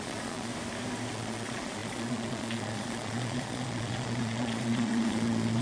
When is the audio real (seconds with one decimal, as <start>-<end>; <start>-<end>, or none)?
0.5-1.1